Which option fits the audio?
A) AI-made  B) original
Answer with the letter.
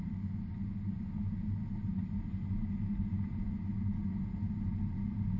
B